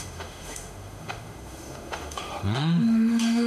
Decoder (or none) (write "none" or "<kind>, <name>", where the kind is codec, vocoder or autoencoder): autoencoder, DAC-VAE